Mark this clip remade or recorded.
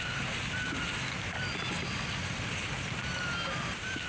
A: recorded